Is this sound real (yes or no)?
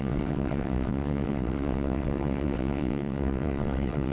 no